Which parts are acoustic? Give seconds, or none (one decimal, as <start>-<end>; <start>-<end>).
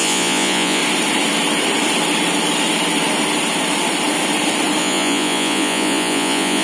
0.8-4.8